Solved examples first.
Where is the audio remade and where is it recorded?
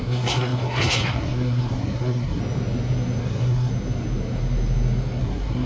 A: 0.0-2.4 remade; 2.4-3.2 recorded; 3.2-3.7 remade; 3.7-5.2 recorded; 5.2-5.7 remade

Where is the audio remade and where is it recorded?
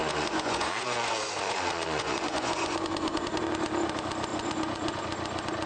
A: 0.0-3.4 remade; 3.4-4.3 recorded; 4.3-5.0 remade; 5.0-5.7 recorded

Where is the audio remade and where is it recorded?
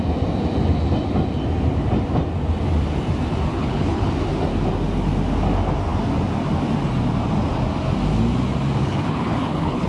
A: 0.0-3.5 recorded; 3.5-4.1 remade; 4.1-8.8 recorded; 8.8-9.9 remade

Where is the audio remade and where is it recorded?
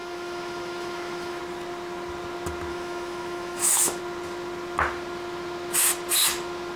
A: 0.0-1.4 remade; 1.4-2.7 recorded; 2.7-4.0 remade; 4.0-6.8 recorded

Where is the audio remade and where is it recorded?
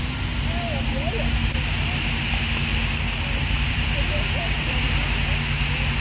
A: 0.0-2.7 recorded; 2.7-4.8 remade; 4.8-6.0 recorded